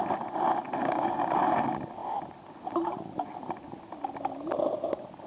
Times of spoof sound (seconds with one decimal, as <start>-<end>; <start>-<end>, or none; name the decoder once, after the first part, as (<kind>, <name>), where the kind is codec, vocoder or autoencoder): 0.8-1.4 (codec, DAC)